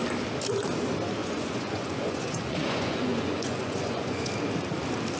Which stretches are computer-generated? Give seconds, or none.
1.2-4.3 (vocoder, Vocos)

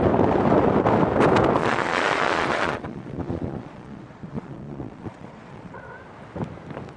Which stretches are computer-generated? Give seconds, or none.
1.6-5.8 (vocoder, Vocos)

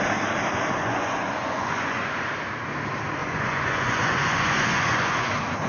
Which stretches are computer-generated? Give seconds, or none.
0.8-2.3 (vocoder, Vocos); 3.2-5.3

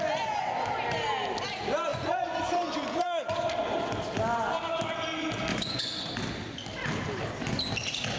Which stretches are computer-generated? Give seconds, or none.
1.9-3.5 (vocoder, Vocos); 5.5-6.1

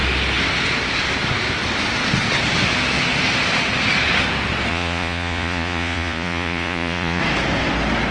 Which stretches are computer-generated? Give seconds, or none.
4.7-7.2 (vocoder, Vocos)

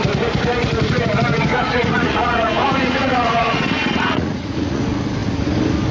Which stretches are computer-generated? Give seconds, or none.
1.3-4.8 (vocoder, Vocos)